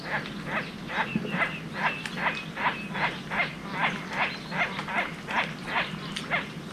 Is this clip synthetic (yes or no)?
no